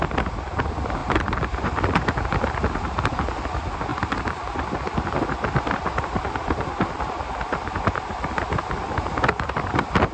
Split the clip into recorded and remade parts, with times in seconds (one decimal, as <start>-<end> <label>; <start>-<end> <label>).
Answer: 0.0-1.0 recorded; 1.0-2.5 remade; 2.5-10.1 recorded